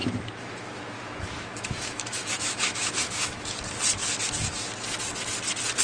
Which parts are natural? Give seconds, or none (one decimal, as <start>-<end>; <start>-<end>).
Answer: 3.5-5.8